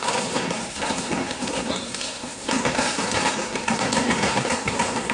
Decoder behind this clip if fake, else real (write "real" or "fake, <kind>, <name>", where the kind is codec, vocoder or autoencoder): fake, codec, SNAC